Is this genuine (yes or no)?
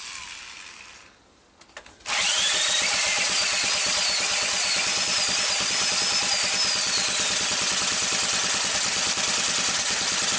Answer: yes